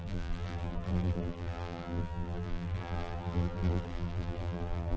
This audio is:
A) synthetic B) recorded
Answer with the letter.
A